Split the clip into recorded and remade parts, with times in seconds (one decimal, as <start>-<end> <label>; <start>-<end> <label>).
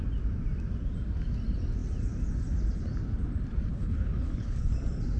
0.0-3.7 recorded; 3.7-4.7 remade; 4.7-5.2 recorded